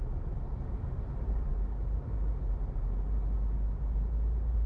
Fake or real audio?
real